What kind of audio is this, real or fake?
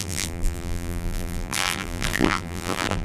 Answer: fake